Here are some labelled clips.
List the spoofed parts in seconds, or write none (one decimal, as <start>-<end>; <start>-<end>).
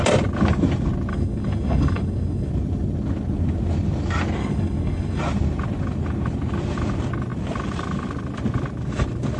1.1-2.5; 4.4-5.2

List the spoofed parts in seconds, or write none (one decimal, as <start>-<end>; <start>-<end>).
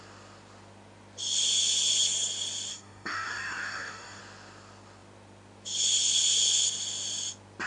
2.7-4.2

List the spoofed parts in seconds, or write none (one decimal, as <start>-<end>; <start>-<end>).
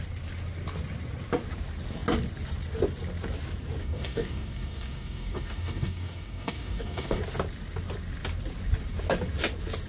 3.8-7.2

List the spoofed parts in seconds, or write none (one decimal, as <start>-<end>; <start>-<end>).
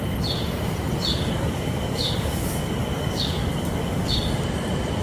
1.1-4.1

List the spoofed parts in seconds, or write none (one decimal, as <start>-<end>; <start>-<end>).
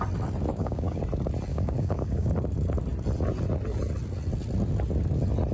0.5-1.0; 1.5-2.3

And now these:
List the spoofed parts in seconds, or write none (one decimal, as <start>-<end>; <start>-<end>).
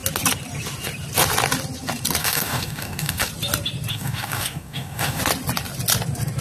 2.2-3.3; 3.9-5.2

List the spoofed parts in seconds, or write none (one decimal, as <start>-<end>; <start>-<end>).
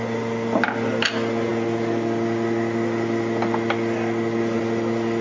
none